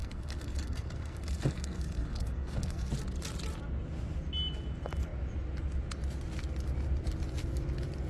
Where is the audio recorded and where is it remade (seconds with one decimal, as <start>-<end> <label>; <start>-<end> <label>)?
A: 0.0-2.9 remade; 2.9-8.1 recorded